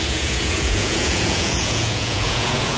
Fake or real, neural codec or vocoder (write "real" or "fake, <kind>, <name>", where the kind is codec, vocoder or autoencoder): fake, vocoder, Vocos